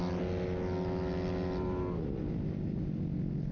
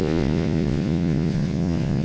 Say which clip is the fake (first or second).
second